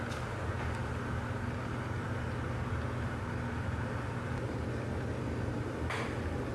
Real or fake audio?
real